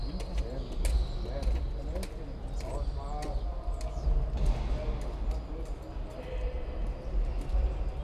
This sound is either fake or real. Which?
real